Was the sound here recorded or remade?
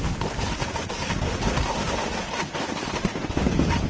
recorded